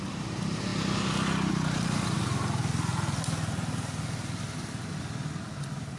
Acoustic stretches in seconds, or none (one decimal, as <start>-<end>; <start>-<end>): 0.0-6.0